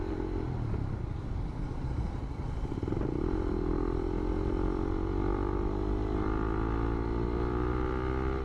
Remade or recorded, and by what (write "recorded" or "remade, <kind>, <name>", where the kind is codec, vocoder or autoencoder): recorded